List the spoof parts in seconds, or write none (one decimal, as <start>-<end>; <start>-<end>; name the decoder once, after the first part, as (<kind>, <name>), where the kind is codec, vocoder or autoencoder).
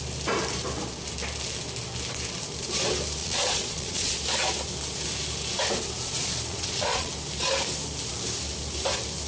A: 3.2-4.1 (vocoder, Vocos); 6.5-7.1